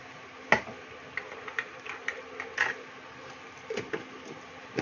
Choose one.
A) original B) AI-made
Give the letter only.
A